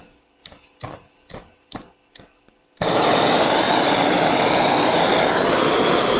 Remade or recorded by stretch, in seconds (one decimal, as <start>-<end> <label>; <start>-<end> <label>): 0.0-6.2 recorded